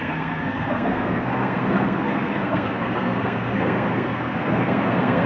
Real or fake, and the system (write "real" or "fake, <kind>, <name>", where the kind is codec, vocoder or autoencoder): fake, codec, SNAC